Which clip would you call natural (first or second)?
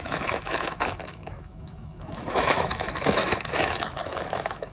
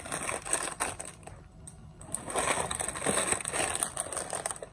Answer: second